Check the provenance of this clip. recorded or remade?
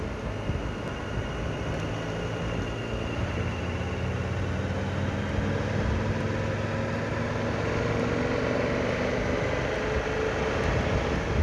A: recorded